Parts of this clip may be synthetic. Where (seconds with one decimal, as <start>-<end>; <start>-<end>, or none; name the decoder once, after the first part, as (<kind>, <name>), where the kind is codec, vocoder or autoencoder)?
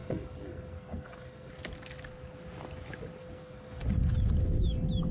0.0-1.5 (codec, SNAC); 3.2-3.8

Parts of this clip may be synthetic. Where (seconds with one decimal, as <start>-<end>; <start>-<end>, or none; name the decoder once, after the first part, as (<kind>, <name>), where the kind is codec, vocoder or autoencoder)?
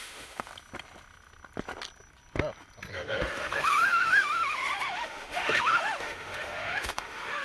0.0-0.5 (autoencoder, DAC-VAE); 2.9-7.4